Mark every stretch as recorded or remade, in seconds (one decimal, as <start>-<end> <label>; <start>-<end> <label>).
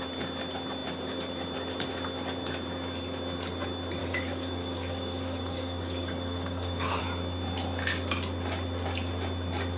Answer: 0.0-4.0 recorded; 4.0-7.0 remade; 7.0-9.8 recorded